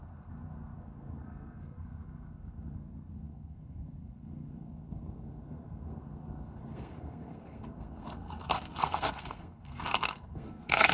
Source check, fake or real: fake